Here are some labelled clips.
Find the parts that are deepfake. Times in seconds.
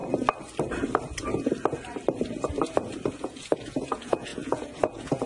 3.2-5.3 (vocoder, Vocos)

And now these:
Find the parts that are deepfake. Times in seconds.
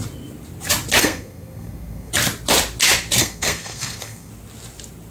1.0-2.1 (codec, SNAC); 3.2-4.3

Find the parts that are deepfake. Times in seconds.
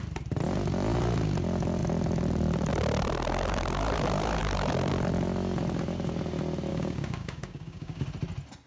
6.7-8.0 (codec, DAC)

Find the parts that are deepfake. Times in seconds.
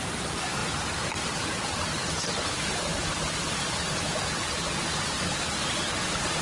2.9-6.4 (vocoder, BigVGAN v2)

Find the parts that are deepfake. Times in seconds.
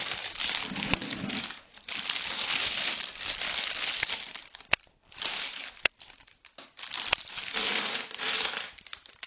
1.9-3.9 (vocoder, BigVGAN v2); 4.4-5.2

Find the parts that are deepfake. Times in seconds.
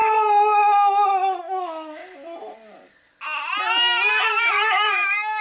1.4-2.0 (autoencoder, DAC-VAE); 4.1-5.4